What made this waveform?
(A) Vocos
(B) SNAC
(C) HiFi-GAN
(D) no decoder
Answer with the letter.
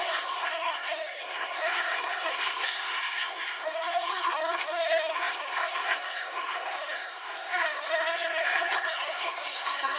B